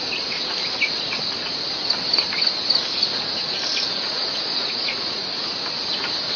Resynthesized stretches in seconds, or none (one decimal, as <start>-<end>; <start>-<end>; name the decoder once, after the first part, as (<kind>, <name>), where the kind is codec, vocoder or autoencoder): 0.0-0.6 (vocoder, Vocos); 4.1-5.4